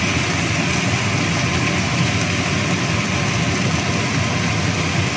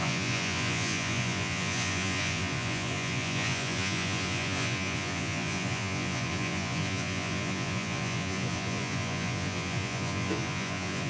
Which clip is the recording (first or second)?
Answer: first